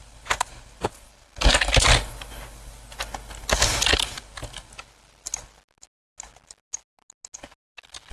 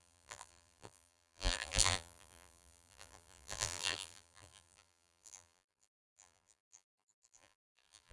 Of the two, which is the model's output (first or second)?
second